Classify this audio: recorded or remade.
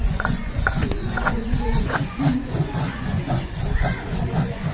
remade